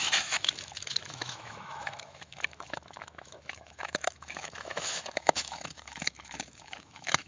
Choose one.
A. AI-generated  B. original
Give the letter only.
A